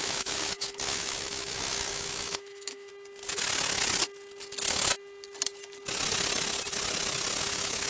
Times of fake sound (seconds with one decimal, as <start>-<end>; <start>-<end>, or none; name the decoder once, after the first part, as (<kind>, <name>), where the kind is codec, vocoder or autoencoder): 0.0-2.9 (autoencoder, DAC-VAE); 7.4-7.9